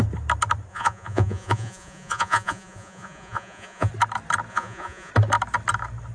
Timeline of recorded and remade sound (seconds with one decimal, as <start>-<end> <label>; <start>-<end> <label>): 0.0-0.7 recorded; 0.7-3.9 remade; 3.9-4.5 recorded; 4.5-5.1 remade; 5.1-6.1 recorded